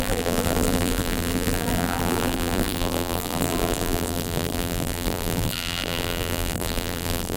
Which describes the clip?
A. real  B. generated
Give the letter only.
B